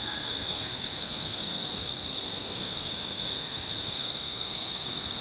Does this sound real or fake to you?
fake